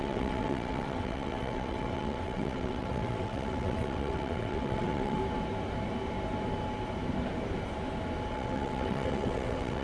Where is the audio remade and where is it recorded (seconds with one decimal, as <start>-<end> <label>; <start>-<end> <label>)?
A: 0.0-5.2 remade; 5.2-8.3 recorded; 8.3-9.8 remade